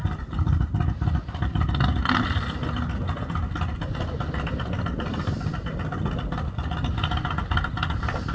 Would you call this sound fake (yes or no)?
no